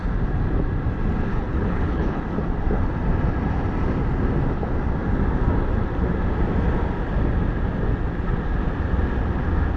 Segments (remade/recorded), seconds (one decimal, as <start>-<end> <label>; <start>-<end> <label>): 0.0-1.3 recorded; 1.3-2.2 remade; 2.2-9.8 recorded